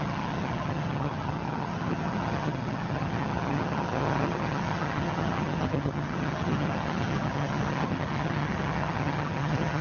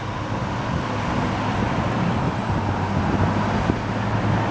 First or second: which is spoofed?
first